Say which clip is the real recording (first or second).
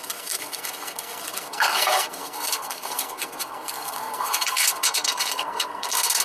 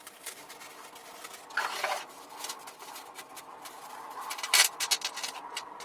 second